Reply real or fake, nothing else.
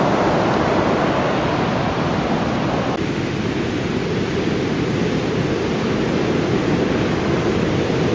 real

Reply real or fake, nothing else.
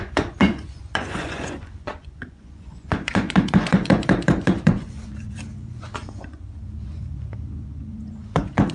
fake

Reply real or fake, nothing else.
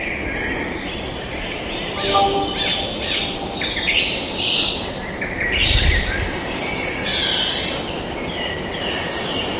real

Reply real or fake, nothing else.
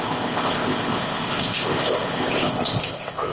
fake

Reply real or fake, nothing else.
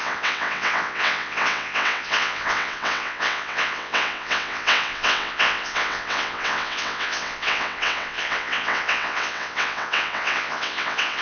fake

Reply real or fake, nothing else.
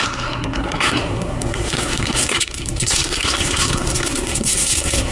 fake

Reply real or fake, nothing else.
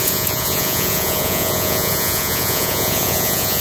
fake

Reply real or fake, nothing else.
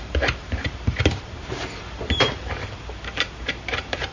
fake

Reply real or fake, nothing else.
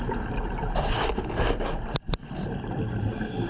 real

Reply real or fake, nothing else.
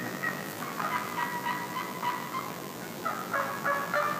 fake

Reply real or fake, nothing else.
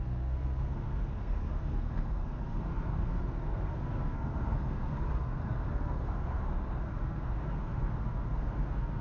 fake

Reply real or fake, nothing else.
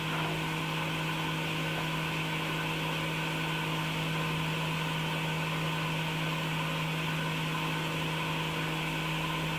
real